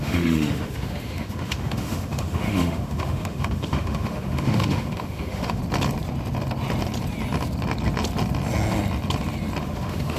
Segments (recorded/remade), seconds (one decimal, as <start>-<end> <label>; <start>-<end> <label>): 0.0-5.6 remade; 5.6-9.6 recorded; 9.6-10.2 remade